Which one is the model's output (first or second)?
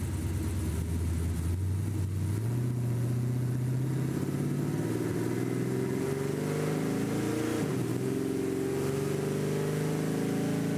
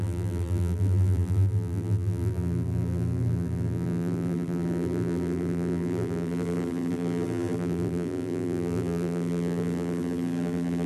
second